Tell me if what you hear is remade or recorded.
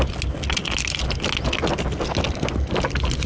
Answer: recorded